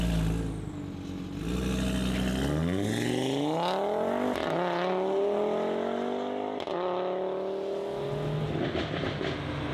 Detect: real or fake real